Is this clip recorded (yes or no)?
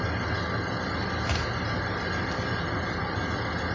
yes